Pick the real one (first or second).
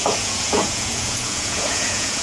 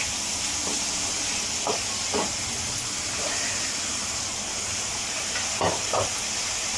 second